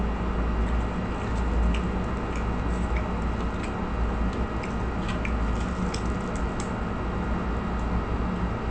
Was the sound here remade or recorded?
recorded